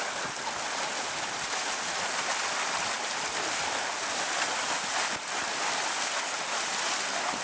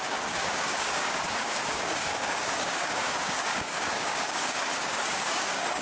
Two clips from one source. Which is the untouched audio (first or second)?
first